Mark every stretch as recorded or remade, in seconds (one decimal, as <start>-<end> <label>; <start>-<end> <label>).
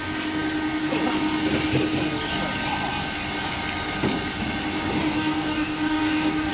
0.0-5.0 recorded; 5.0-6.5 remade